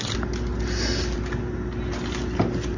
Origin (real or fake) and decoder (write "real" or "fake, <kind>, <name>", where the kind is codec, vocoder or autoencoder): real